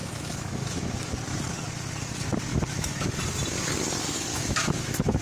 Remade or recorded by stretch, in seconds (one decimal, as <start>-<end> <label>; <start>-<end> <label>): 0.0-1.1 remade; 1.1-2.5 recorded; 2.5-3.2 remade; 3.2-4.3 recorded; 4.3-5.2 remade